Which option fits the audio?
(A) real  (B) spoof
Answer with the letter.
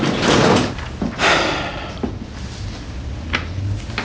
A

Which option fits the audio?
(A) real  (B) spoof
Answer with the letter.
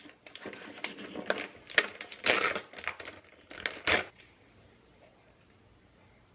A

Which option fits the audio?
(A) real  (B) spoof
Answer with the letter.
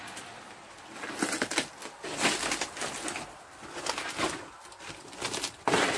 A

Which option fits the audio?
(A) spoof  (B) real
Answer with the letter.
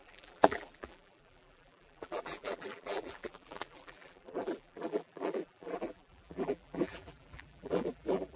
A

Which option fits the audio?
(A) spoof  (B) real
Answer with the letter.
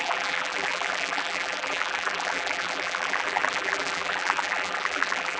A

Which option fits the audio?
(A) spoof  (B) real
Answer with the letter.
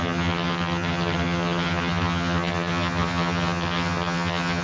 A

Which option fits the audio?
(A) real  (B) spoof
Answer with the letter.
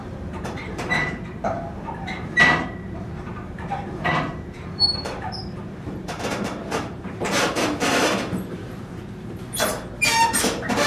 B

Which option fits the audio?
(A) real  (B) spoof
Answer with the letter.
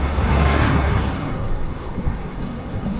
B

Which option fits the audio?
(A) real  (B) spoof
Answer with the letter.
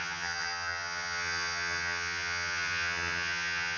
B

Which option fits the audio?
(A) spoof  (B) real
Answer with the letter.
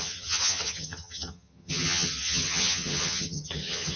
A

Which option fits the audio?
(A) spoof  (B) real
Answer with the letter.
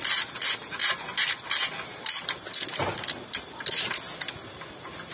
B